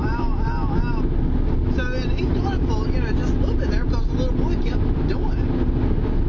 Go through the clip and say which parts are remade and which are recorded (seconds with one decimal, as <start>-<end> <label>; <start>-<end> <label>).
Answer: 0.0-6.3 recorded